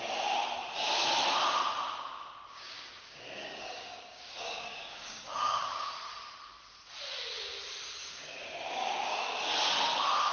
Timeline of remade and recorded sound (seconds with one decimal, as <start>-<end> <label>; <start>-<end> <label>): 0.0-2.5 recorded; 2.5-5.9 remade; 5.9-8.0 recorded; 8.0-9.3 remade; 9.3-10.3 recorded